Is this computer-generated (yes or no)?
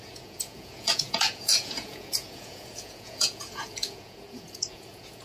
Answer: yes